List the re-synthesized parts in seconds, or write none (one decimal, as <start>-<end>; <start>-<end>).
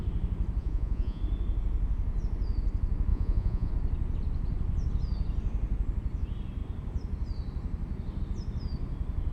0.6-1.2; 3.1-3.7